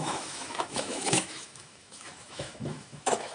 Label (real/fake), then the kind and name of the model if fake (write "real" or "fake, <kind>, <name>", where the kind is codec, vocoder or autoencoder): fake, autoencoder, DAC-VAE